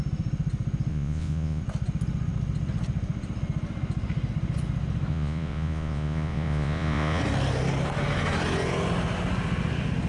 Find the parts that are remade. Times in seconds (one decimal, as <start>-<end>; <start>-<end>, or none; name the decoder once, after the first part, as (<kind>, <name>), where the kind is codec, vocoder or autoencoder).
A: 0.9-1.6 (vocoder, Vocos); 5.1-7.2